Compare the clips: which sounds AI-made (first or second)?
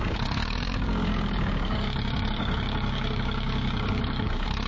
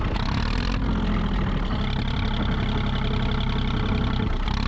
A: first